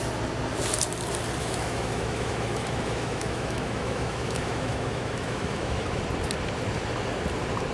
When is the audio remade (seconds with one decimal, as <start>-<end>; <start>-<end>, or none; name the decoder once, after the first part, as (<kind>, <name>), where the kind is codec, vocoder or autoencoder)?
1.4-6.0 (autoencoder, DAC-VAE)